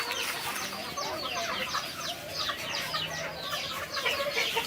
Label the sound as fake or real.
real